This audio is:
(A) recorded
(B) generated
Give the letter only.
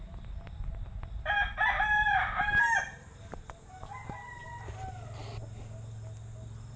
A